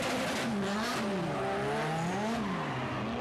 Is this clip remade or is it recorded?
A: recorded